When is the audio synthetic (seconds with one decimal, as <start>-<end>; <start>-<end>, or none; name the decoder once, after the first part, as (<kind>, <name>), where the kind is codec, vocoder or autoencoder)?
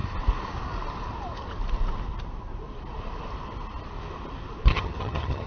4.7-5.5 (vocoder, HiFi-GAN)